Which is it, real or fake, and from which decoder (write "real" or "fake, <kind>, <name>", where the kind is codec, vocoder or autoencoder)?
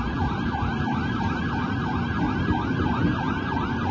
real